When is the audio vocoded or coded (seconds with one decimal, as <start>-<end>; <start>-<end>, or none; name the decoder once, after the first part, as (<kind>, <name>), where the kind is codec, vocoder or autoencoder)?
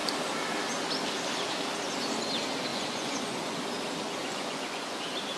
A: 2.7-3.6 (vocoder, Vocos); 4.2-5.0